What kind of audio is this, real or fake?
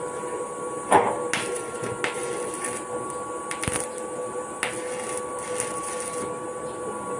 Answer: real